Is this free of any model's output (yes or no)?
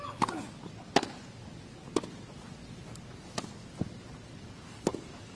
yes